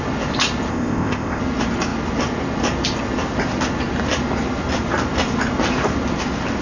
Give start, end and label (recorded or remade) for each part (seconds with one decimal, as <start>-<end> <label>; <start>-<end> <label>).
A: 0.0-0.7 recorded; 0.7-1.4 remade; 1.4-6.6 recorded